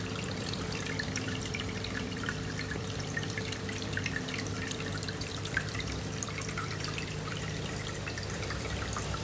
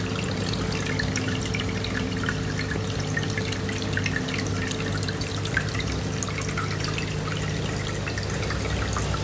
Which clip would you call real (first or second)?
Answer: second